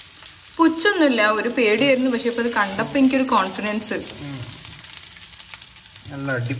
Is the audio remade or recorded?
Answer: recorded